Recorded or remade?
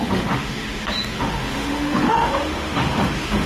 remade